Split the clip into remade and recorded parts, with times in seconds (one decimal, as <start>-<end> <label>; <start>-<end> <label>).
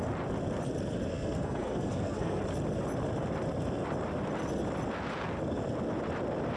0.0-1.1 recorded; 1.1-2.4 remade; 2.4-6.6 recorded